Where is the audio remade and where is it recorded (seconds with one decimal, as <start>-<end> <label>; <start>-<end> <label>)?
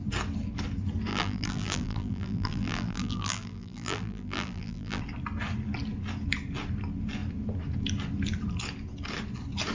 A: 0.0-1.1 recorded; 1.1-5.0 remade; 5.0-9.7 recorded